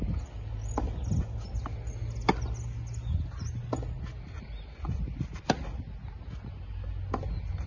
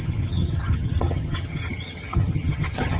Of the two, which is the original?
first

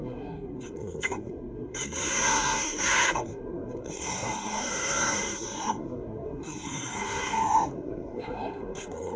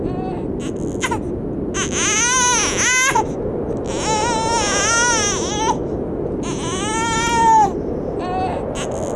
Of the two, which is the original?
second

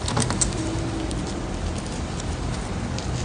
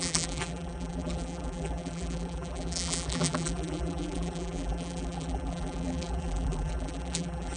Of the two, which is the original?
first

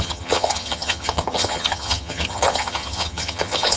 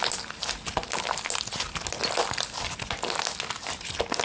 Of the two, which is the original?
second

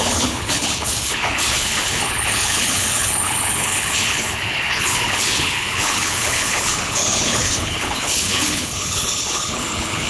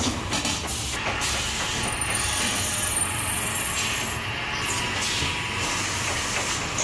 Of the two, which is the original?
second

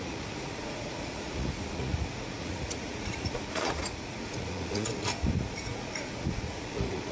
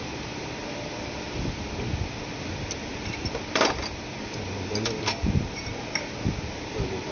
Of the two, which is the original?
second